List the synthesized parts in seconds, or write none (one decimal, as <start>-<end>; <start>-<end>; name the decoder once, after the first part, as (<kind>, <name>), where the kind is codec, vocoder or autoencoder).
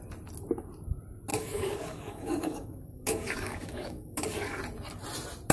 1.3-4.6 (codec, DAC)